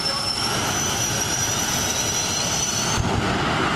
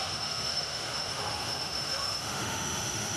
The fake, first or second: second